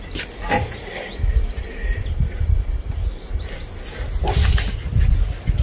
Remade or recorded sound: recorded